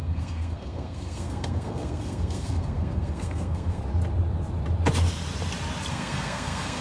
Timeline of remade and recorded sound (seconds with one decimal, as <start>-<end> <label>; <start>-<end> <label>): 0.0-3.8 remade; 3.8-5.9 recorded; 5.9-6.8 remade